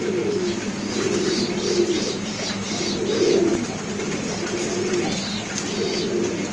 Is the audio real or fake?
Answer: real